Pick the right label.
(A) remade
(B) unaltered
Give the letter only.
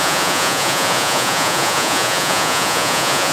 A